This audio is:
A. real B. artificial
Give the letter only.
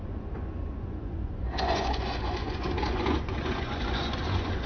B